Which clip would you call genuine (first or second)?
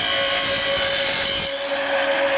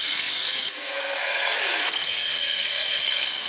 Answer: first